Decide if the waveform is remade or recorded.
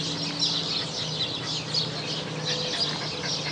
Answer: recorded